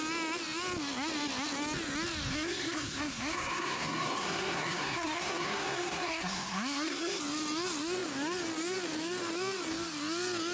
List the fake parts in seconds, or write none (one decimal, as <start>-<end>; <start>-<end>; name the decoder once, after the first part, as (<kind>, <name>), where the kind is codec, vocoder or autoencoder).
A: 2.3-7.2 (codec, SNAC)